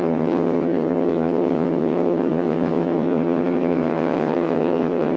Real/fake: fake